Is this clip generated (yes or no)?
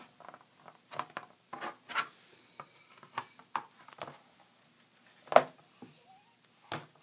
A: no